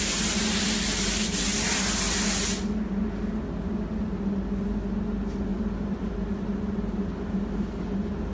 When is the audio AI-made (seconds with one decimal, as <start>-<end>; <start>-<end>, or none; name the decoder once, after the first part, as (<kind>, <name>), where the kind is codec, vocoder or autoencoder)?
5.5-6.1 (vocoder, BigVGAN v2)